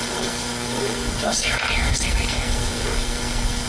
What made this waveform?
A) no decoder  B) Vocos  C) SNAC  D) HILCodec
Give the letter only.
C